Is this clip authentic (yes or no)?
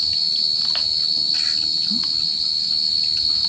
yes